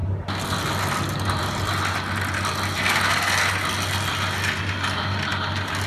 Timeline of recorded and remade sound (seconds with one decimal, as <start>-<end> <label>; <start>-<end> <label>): 0.0-5.9 recorded